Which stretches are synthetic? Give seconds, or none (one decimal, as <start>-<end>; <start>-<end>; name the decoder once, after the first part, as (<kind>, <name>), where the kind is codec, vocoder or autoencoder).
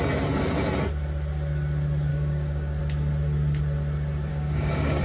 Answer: 2.1-2.8 (codec, DAC); 4.3-5.0